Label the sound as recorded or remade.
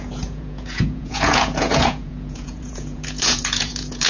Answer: remade